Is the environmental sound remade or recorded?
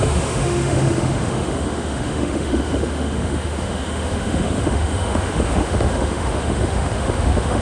remade